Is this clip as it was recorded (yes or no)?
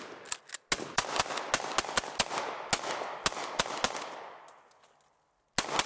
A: yes